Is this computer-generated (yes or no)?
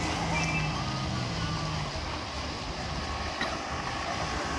no